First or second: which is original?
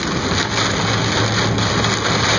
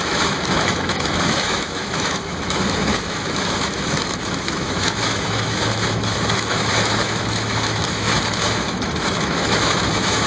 first